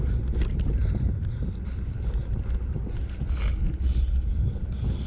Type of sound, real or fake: real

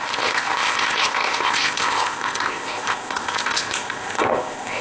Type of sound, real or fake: fake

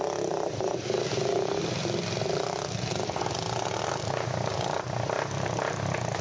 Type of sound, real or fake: real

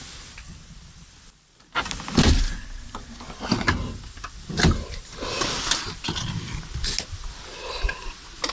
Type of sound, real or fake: real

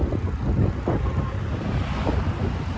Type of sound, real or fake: real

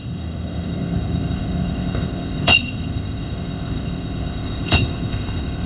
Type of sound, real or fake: fake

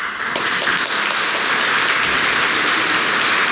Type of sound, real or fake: real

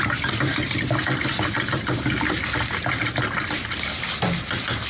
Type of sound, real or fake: real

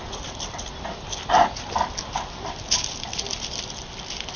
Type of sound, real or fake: real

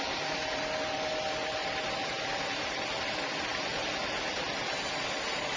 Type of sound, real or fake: real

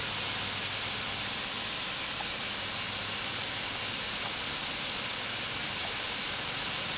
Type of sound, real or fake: real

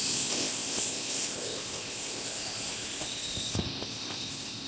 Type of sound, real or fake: fake